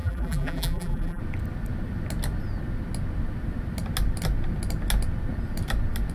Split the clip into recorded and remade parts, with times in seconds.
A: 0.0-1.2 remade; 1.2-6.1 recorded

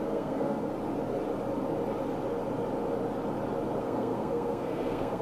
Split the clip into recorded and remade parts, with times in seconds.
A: 0.0-0.7 remade; 0.7-3.8 recorded; 3.8-5.2 remade

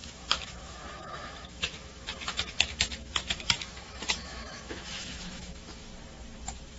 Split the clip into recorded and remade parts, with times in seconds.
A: 0.0-5.9 remade; 5.9-6.8 recorded

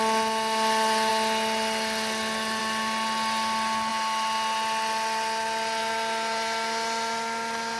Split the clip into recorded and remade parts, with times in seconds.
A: 0.0-7.8 recorded